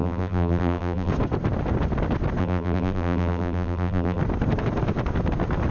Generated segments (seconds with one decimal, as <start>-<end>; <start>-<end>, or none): 0.0-1.1; 2.4-4.2